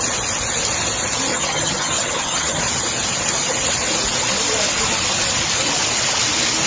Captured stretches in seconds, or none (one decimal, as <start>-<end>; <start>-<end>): 0.0-1.3; 2.6-6.7